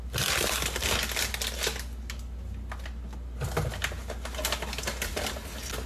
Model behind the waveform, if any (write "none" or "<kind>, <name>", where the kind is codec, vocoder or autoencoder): none